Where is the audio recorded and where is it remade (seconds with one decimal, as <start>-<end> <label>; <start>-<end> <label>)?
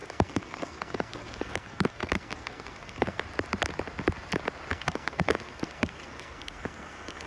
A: 0.0-3.2 remade; 3.2-4.7 recorded; 4.7-7.3 remade